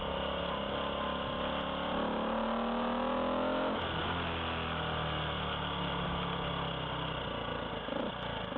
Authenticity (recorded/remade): recorded